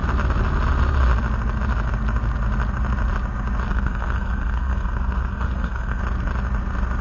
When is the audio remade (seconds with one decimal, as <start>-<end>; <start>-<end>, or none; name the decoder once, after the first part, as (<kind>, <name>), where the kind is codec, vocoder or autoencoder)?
3.7-6.0 (codec, SNAC)